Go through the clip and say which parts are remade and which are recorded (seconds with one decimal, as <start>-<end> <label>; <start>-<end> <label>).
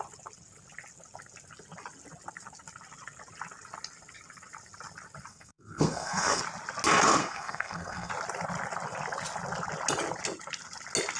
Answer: 0.0-5.3 recorded; 5.3-6.4 remade; 6.4-7.2 recorded; 7.2-8.1 remade; 8.1-11.2 recorded